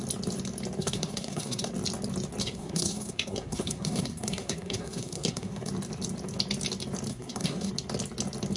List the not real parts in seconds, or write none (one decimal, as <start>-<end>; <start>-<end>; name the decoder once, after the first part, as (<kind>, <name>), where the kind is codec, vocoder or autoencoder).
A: 0.8-1.7 (codec, SNAC); 2.4-5.7; 7.1-7.7